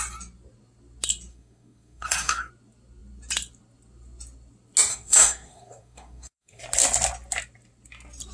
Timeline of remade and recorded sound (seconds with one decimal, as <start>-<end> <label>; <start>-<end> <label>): 0.0-1.3 recorded; 1.3-2.5 remade; 2.5-4.9 recorded; 4.9-6.6 remade; 6.6-8.3 recorded

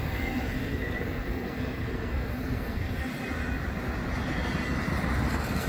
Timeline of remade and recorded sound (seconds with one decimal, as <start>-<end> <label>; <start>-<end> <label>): 0.0-3.1 remade; 3.1-5.3 recorded; 5.3-5.7 remade

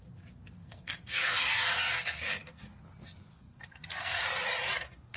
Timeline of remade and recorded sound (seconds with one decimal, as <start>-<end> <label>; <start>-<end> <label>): 0.0-0.6 recorded; 0.6-2.8 remade; 2.8-3.3 recorded; 3.3-4.2 remade; 4.2-5.2 recorded

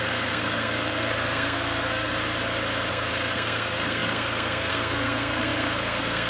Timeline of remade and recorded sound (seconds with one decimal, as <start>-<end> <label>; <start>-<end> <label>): 0.0-2.1 remade; 2.1-2.9 recorded; 2.9-6.3 remade